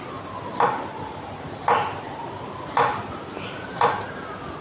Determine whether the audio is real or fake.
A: real